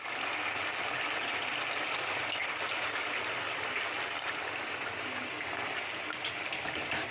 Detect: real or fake real